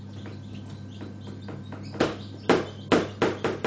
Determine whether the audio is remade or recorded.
recorded